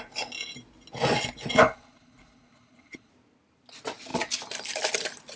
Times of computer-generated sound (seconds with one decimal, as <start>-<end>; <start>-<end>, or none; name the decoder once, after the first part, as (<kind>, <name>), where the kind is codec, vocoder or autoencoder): 1.6-3.1 (codec, HILCodec)